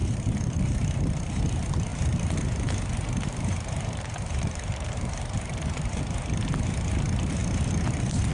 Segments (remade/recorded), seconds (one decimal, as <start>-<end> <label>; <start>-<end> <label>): 0.0-1.4 remade; 1.4-1.9 recorded; 1.9-6.0 remade; 6.0-7.4 recorded; 7.4-8.3 remade